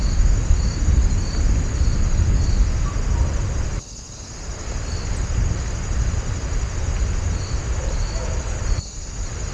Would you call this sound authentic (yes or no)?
yes